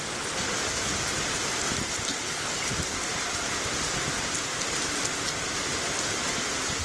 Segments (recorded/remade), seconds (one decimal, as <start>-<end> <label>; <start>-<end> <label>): 0.0-2.1 recorded; 2.1-2.7 remade; 2.7-6.8 recorded